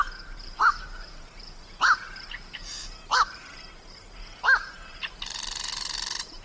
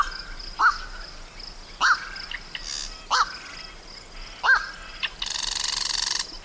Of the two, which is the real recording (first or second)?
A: second